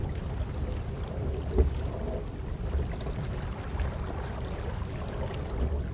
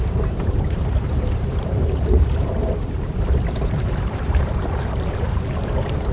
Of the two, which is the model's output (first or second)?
second